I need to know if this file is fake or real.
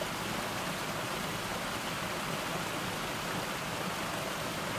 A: real